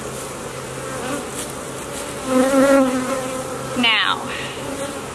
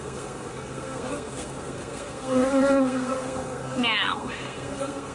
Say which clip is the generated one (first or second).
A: second